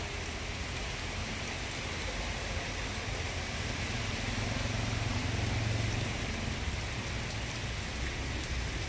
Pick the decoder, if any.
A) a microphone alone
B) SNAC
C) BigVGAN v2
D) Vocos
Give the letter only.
A